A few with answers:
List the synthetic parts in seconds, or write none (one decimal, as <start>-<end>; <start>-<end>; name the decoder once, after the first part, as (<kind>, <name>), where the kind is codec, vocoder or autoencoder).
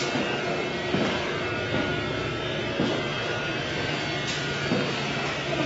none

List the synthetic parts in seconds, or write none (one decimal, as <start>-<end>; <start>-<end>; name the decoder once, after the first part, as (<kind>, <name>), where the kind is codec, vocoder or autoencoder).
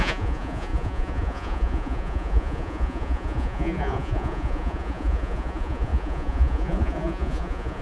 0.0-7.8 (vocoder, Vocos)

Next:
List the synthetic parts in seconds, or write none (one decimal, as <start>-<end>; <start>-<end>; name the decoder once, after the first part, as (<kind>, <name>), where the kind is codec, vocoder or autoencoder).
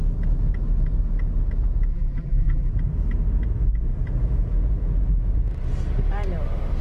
1.9-2.7 (vocoder, BigVGAN v2)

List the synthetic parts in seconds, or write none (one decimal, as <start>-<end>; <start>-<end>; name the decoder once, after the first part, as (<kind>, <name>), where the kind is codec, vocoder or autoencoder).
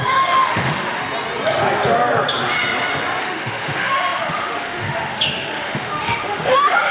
0.0-1.0 (autoencoder, DAC-VAE); 3.2-6.9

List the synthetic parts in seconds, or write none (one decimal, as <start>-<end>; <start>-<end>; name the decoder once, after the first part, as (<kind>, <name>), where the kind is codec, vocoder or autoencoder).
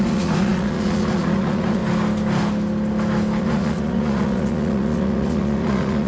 0.0-1.8 (vocoder, Vocos); 3.4-6.1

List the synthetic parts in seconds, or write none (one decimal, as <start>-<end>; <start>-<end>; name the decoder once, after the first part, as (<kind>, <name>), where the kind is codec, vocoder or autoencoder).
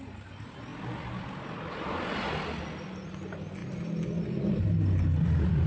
none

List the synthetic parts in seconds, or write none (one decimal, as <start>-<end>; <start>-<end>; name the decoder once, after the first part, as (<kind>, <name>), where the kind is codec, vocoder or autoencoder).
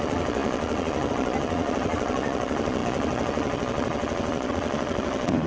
0.0-5.5 (vocoder, Vocos)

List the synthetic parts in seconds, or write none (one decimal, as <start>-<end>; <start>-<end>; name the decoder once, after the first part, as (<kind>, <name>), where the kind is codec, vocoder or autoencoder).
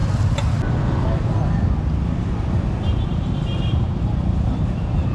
3.1-5.1 (vocoder, BigVGAN v2)